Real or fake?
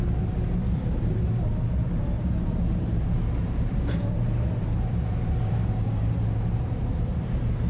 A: fake